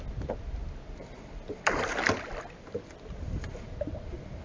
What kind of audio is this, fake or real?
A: real